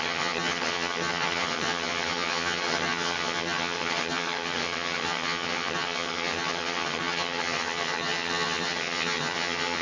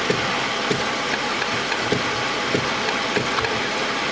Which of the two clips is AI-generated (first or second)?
first